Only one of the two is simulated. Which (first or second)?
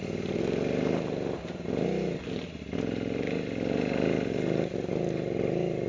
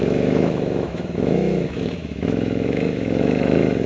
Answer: second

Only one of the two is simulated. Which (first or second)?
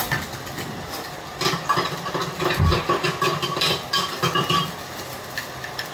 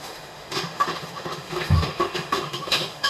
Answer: second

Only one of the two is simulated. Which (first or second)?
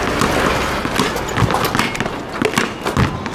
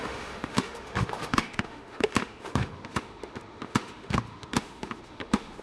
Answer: second